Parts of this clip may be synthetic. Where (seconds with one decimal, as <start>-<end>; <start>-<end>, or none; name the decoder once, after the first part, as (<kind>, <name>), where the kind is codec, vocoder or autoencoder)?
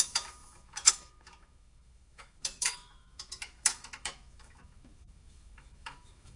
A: 0.0-6.4 (autoencoder, DAC-VAE)